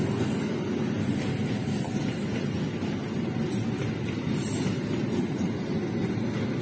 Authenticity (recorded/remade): recorded